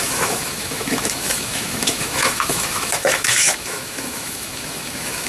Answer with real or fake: fake